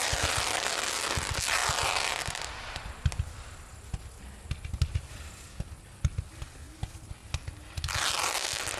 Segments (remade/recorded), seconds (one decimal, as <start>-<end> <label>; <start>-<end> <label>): 0.0-8.8 recorded